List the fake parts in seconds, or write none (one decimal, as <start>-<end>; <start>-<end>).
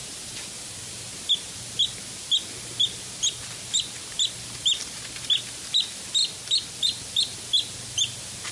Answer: none